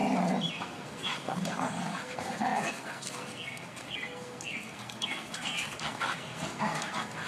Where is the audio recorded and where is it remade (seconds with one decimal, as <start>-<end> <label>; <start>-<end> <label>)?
0.0-0.5 recorded; 0.5-7.3 remade